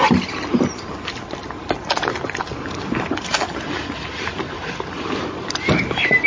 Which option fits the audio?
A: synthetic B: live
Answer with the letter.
B